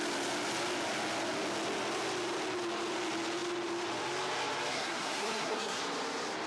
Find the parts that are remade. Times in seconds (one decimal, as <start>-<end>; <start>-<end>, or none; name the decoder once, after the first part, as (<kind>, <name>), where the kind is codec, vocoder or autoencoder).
4.7-5.8 (codec, SNAC)